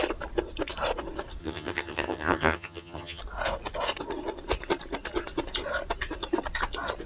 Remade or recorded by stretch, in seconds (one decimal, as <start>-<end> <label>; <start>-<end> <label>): 0.0-1.4 recorded; 1.4-3.2 remade; 3.2-7.1 recorded